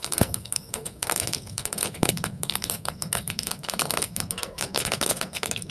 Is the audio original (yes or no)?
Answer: no